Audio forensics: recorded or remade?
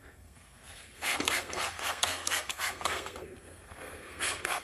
remade